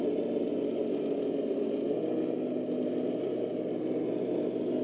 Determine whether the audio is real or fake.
real